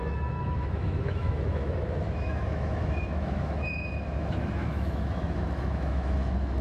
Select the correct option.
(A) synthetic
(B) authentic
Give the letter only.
A